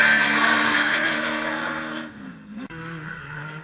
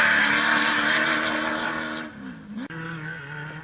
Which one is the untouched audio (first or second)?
second